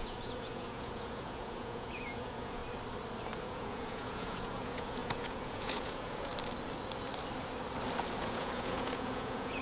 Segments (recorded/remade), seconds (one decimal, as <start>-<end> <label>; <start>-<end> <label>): 0.0-2.6 remade; 2.6-3.4 recorded; 3.4-6.3 remade; 6.3-8.2 recorded; 8.2-9.6 remade